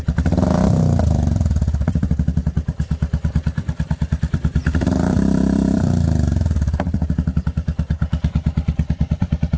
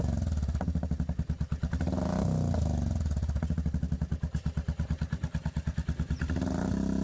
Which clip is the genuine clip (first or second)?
second